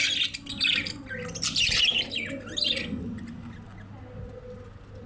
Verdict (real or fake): real